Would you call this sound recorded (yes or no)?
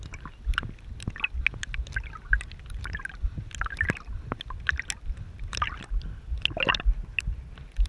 yes